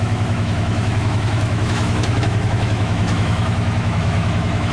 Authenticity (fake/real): fake